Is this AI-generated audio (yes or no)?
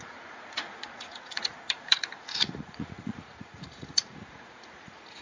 yes